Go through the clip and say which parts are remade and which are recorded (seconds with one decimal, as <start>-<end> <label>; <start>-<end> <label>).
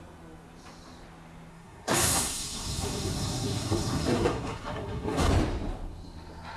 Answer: 0.0-1.5 recorded; 1.5-5.3 remade; 5.3-6.6 recorded